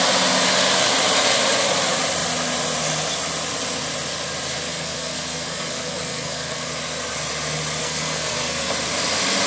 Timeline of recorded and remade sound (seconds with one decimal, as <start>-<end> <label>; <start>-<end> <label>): 0.0-4.7 recorded; 4.7-6.7 remade; 6.7-7.8 recorded; 7.8-8.7 remade; 8.7-9.5 recorded

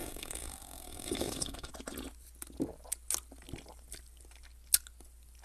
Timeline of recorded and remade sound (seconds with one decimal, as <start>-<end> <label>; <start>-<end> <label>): 0.0-1.7 remade; 1.7-5.4 recorded

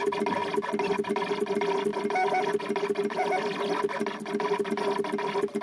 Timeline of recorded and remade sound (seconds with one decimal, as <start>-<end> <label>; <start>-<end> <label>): 0.0-5.6 recorded

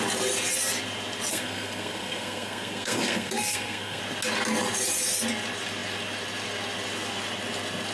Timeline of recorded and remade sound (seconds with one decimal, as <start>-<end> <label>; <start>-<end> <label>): 0.0-1.3 recorded; 1.3-4.0 remade; 4.0-7.9 recorded